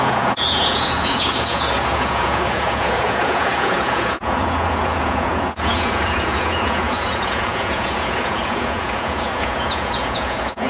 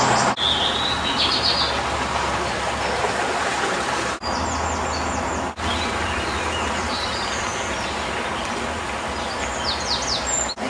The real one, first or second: second